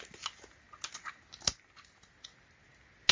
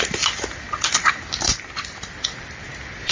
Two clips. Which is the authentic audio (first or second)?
first